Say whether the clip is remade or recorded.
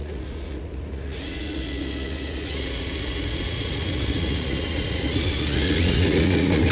remade